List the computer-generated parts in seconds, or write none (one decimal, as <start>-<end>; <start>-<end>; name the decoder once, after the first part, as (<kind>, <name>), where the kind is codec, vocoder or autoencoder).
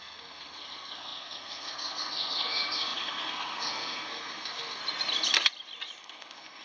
0.0-4.8 (codec, SNAC); 6.0-6.6